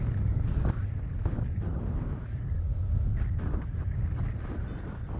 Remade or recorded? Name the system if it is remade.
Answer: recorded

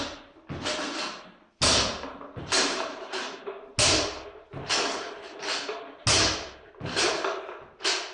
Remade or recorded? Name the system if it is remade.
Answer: recorded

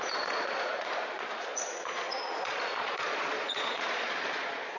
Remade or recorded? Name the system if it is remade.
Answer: remade, vocoder, Vocos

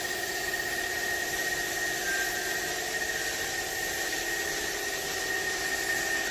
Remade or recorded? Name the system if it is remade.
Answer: recorded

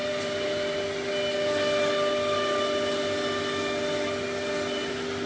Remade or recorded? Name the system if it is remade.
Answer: recorded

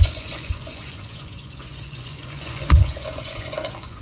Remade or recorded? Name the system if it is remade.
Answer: remade, vocoder, Vocos